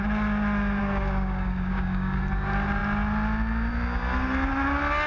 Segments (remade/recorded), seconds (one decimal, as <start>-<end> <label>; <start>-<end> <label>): 0.0-0.8 recorded; 0.8-2.2 remade; 2.2-5.1 recorded